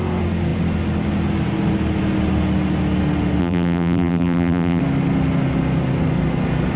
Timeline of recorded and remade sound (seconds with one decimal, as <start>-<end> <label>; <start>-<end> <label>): 0.0-3.4 recorded; 3.4-4.8 remade; 4.8-6.8 recorded